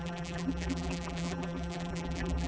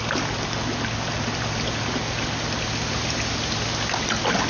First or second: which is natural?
second